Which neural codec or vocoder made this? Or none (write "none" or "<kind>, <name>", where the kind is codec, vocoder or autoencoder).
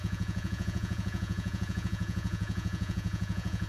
vocoder, Vocos